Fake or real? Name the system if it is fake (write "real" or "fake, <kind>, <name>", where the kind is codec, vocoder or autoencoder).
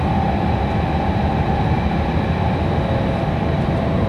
real